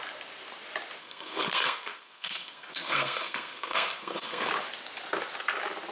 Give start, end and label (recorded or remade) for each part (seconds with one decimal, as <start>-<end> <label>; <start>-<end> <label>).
0.0-1.0 recorded; 1.0-4.5 remade; 4.5-5.9 recorded